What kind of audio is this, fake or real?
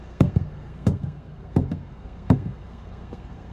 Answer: fake